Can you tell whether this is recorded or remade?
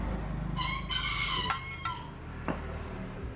recorded